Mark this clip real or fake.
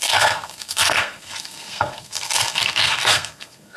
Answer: fake